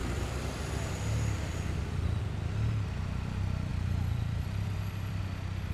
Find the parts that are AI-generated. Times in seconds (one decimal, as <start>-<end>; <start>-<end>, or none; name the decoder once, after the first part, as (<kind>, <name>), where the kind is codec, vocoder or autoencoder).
0.0-2.2 (vocoder, BigVGAN v2); 3.7-5.2